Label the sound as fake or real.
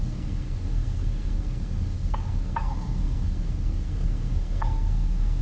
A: fake